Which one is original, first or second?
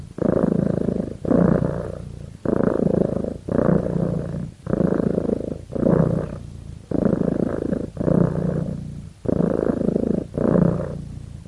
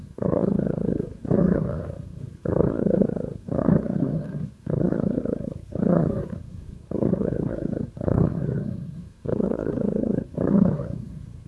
first